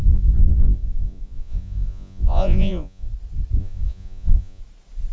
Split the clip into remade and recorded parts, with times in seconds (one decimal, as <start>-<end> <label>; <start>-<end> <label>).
0.0-3.1 remade; 3.1-3.6 recorded; 3.6-4.6 remade; 4.6-5.1 recorded